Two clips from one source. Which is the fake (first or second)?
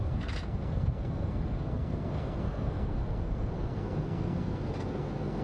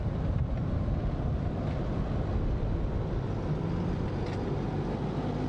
first